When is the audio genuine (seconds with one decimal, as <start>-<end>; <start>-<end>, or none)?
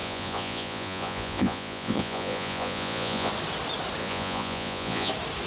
3.3-4.0; 5.1-5.5